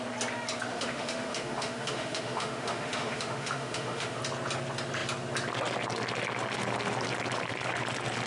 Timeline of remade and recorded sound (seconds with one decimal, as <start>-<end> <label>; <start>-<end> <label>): 0.0-0.7 recorded; 0.7-4.2 remade; 4.2-8.3 recorded